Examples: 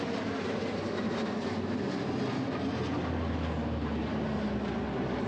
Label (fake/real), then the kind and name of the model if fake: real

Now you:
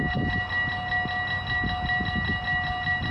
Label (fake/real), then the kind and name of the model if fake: real